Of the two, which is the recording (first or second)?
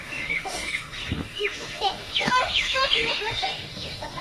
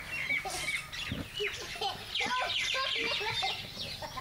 second